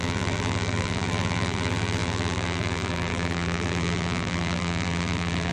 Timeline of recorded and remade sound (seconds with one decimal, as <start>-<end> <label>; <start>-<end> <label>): 0.0-5.5 remade